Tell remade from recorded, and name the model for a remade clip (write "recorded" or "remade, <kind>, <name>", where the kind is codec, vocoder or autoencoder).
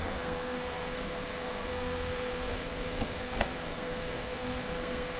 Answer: remade, codec, SNAC